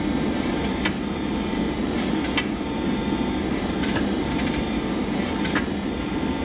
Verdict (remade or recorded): recorded